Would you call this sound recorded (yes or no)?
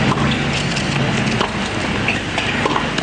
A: yes